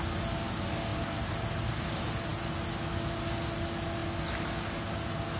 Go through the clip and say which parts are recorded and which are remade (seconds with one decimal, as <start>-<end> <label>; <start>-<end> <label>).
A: 0.0-5.4 recorded